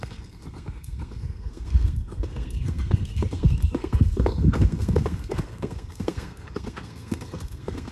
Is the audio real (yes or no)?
no